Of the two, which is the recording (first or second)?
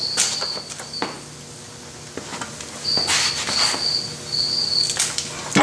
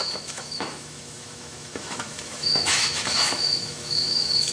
first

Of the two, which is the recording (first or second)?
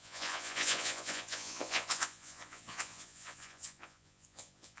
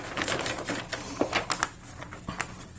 second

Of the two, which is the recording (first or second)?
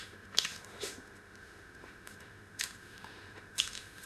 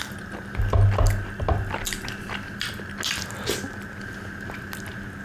second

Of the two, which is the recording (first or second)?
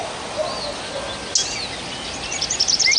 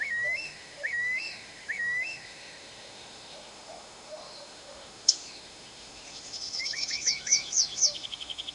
first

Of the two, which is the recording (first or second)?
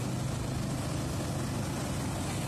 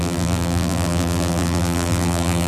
first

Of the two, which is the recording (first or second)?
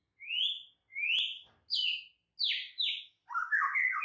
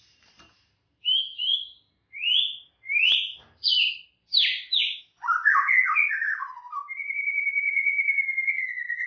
first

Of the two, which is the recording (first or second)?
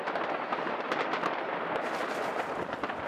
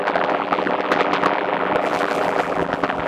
first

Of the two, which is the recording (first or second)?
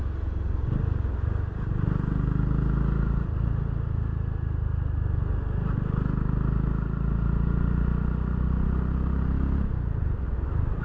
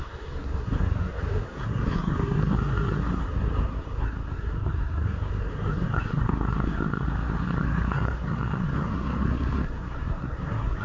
first